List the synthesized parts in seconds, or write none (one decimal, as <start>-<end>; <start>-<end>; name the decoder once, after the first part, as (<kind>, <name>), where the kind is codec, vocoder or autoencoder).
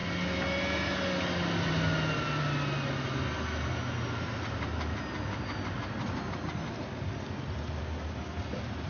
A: none